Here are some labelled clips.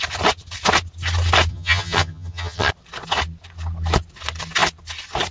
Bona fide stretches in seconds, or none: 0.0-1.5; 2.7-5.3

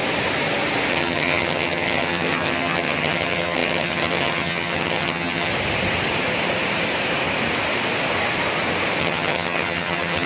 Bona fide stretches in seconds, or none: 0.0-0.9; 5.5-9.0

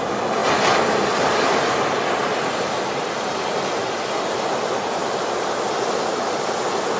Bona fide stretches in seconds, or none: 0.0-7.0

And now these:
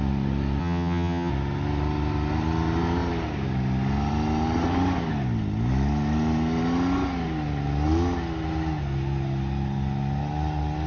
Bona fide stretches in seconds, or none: 0.0-0.6; 1.3-10.9

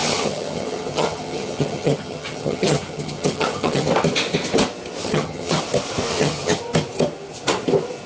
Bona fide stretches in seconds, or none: 3.9-5.0; 5.6-6.1; 6.6-8.1

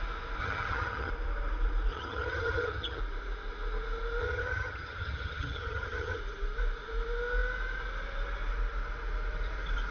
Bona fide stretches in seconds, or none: 0.0-0.4; 1.1-1.9; 3.0-4.2; 6.2-9.9